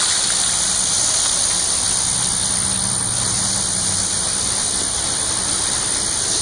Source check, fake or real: real